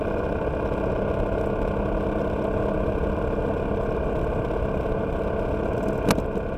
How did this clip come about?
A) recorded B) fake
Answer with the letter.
A